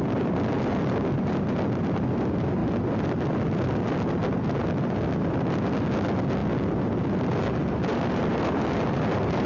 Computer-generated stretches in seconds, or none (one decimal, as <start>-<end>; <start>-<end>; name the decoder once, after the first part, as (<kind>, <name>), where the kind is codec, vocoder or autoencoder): none